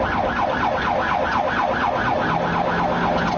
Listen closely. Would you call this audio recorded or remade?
recorded